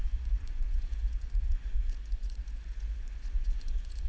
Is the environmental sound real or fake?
fake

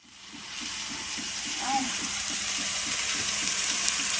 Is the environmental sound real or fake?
fake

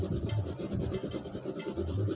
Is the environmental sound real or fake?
real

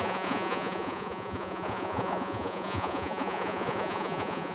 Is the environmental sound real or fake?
fake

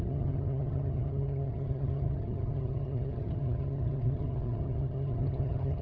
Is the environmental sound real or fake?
fake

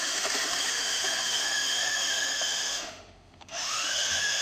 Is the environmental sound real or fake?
fake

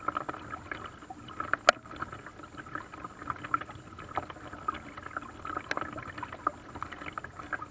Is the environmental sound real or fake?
real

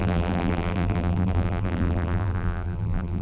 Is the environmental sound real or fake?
fake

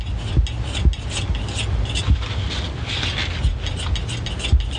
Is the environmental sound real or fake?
real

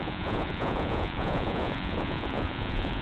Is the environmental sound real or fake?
fake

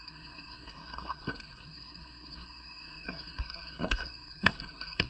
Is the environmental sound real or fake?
fake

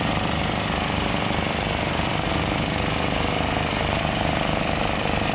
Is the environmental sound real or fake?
real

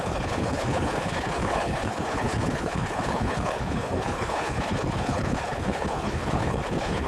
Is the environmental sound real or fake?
fake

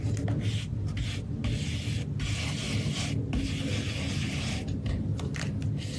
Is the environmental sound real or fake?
real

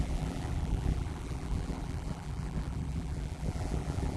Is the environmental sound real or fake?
fake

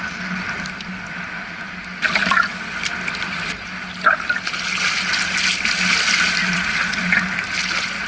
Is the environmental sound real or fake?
real